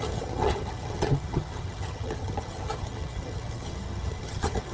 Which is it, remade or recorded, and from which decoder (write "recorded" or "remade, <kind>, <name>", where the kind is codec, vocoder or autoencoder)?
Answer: remade, vocoder, HiFi-GAN